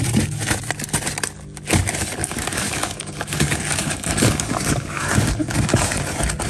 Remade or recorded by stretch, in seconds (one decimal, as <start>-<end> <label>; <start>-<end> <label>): 0.0-2.2 recorded; 2.2-6.0 remade; 6.0-6.5 recorded